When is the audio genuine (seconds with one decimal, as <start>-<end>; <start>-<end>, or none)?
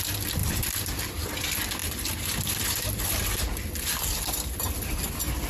0.0-0.4; 1.1-1.8; 5.1-5.5